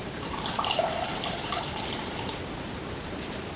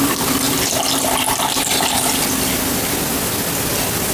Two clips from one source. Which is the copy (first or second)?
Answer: first